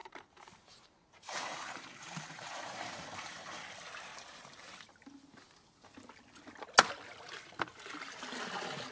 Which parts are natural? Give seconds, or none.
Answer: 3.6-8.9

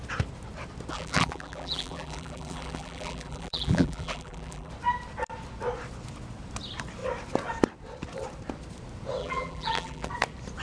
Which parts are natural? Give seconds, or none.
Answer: 0.0-0.9; 4.7-9.2; 10.1-10.6

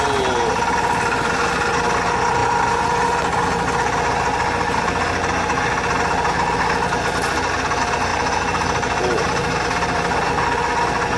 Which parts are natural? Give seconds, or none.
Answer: 0.0-11.2

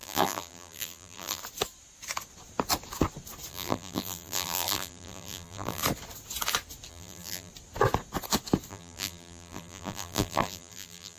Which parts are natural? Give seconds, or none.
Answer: 1.4-3.5; 5.8-6.9; 7.5-8.7

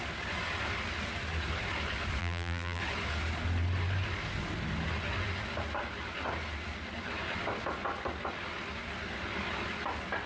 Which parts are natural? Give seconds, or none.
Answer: 0.0-2.2; 2.8-10.3